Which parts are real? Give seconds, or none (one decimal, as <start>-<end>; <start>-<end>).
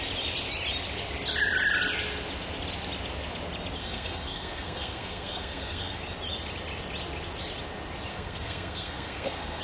0.0-3.8; 6.0-8.1